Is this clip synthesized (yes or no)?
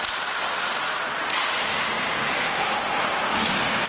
no